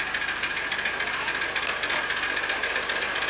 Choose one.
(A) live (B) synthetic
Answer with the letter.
A